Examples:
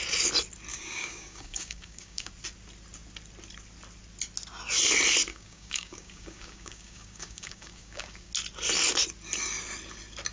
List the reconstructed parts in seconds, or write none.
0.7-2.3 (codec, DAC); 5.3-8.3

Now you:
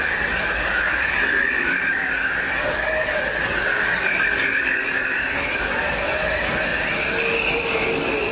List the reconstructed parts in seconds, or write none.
none